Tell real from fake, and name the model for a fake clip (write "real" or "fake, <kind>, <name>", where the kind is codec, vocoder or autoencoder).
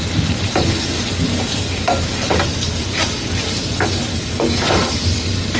real